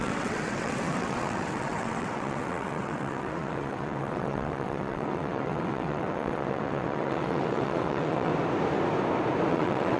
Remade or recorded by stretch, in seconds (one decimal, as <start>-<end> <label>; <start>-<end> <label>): 0.0-8.3 remade; 8.3-9.5 recorded; 9.5-10.0 remade